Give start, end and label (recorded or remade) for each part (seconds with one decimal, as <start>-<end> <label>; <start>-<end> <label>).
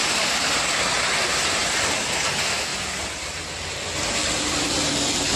0.0-0.8 remade; 0.8-1.3 recorded; 1.3-2.3 remade; 2.3-5.4 recorded